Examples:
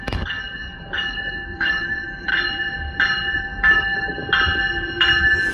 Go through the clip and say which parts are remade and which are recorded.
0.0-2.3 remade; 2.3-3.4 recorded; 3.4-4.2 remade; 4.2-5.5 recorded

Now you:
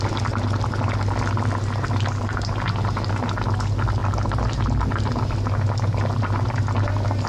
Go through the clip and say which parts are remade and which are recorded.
0.0-4.0 recorded; 4.0-4.6 remade; 4.6-7.3 recorded